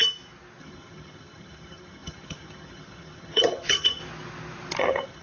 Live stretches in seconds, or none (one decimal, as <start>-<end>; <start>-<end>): 0.0-0.6; 4.0-4.8